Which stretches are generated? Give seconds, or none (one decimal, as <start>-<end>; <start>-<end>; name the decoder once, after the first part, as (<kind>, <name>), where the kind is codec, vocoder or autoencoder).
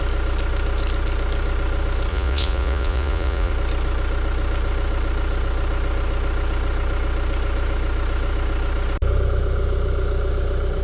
2.1-3.5 (vocoder, Vocos)